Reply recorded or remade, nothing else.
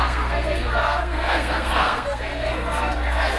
remade